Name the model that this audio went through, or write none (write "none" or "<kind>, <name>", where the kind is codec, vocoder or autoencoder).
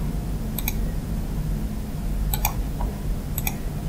none